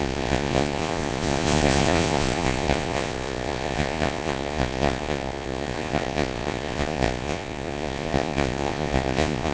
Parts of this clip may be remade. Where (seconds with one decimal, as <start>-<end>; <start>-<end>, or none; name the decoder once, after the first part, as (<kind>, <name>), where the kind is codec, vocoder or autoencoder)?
0.0-9.5 (vocoder, Vocos)